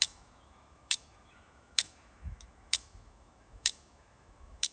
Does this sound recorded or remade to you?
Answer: remade